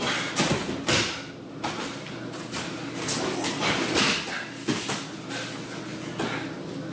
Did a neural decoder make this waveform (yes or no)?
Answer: no